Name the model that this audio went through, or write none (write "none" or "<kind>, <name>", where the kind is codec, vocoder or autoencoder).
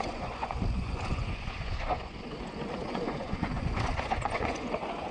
vocoder, Vocos